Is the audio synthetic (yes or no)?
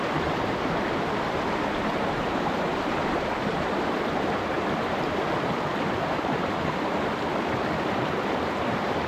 yes